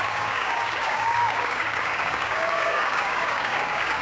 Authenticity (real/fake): fake